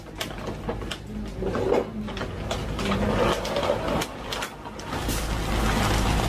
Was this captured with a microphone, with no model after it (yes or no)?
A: yes